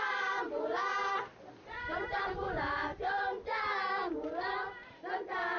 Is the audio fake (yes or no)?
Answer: no